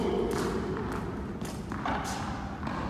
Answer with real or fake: real